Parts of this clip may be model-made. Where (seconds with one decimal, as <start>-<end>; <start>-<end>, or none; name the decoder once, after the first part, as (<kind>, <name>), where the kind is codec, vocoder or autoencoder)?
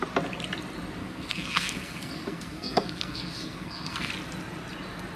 1.0-4.1 (codec, SNAC)